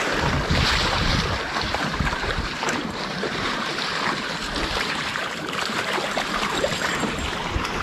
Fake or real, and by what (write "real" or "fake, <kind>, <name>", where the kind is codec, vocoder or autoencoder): fake, vocoder, BigVGAN v2